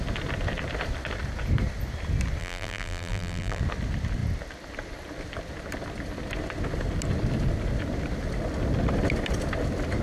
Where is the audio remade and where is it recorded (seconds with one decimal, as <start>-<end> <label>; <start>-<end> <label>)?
0.0-2.4 recorded; 2.4-3.6 remade; 3.6-10.0 recorded